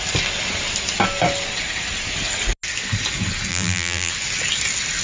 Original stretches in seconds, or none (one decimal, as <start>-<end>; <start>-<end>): 0.0-3.5; 4.1-5.0